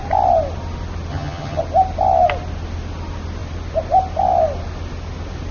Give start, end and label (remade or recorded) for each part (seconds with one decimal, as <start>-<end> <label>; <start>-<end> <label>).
0.0-1.1 recorded; 1.1-1.6 remade; 1.6-5.5 recorded